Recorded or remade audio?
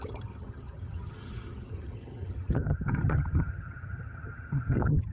remade